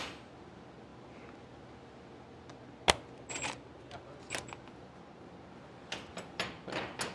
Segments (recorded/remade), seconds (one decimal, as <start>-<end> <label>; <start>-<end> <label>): 0.0-7.1 recorded